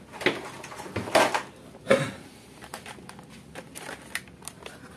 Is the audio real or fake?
real